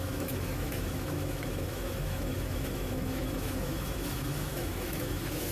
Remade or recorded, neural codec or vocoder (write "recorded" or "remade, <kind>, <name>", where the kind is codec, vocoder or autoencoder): remade, autoencoder, DAC-VAE